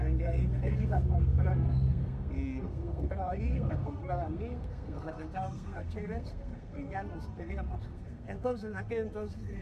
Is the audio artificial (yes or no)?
yes